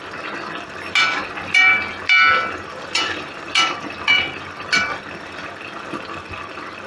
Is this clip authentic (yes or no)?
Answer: yes